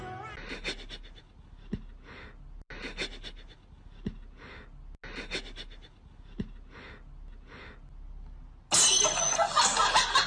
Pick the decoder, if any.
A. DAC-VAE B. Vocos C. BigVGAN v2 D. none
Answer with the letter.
D